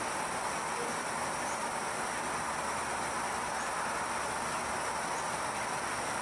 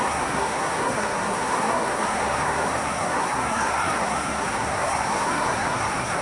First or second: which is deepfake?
second